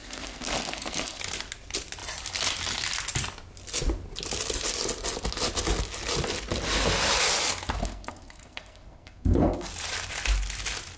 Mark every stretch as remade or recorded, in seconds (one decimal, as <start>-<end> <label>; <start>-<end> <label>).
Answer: 0.0-1.2 remade; 1.2-7.8 recorded; 7.8-9.7 remade; 9.7-11.0 recorded